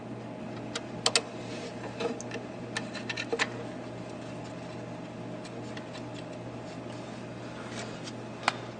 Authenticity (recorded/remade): recorded